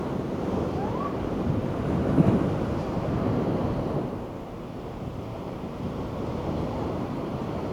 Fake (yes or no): yes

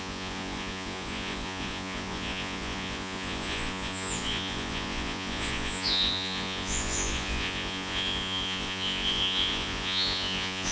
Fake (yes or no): yes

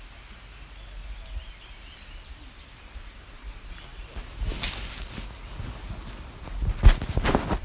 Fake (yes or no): no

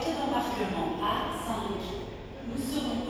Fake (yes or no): no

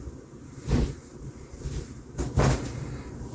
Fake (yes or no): yes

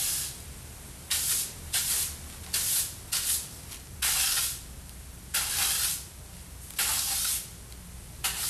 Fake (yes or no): no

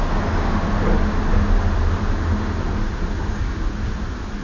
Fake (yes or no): no